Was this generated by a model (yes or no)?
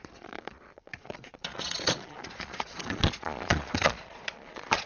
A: yes